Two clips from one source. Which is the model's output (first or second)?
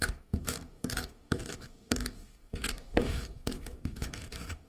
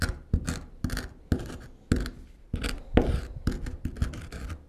first